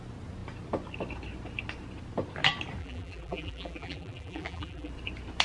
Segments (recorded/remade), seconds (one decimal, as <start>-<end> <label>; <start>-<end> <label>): 0.0-2.8 recorded; 2.8-4.9 remade; 4.9-5.4 recorded